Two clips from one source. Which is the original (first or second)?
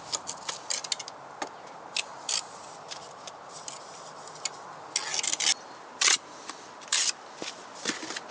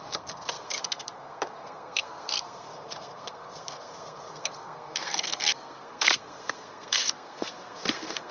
first